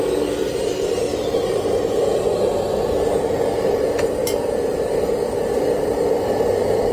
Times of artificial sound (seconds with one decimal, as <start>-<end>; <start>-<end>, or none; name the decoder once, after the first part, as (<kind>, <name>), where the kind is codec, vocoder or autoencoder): 1.1-2.2 (vocoder, BigVGAN v2); 4.2-6.3